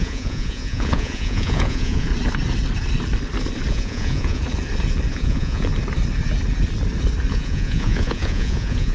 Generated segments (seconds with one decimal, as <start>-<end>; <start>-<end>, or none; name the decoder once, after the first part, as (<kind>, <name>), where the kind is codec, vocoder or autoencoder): 0.0-2.1 (vocoder, Vocos); 3.7-4.4; 5.1-5.7; 7.3-8.9